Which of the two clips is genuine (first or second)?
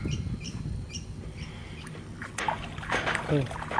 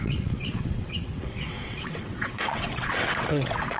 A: first